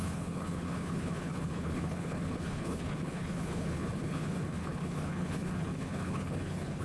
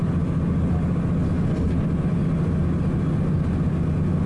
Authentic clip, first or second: second